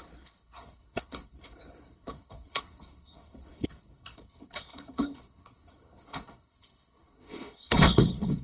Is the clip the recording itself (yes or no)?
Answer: no